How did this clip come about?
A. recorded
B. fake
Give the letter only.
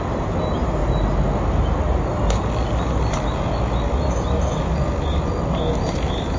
A